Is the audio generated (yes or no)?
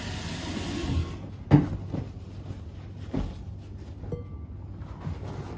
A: no